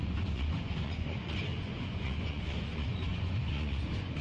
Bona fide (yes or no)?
no